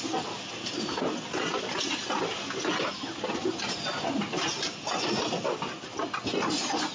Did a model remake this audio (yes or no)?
no